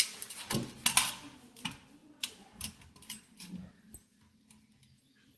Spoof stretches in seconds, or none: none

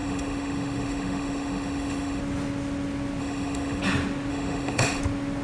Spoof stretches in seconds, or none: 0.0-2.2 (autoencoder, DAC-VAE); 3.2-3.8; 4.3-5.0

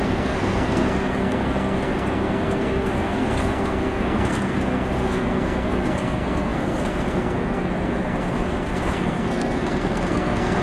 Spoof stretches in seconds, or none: 0.0-10.6 (codec, SNAC)

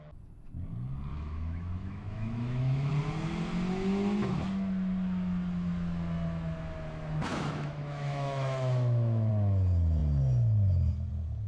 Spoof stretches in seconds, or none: 1.1-2.9 (autoencoder, DAC-VAE); 7.3-9.3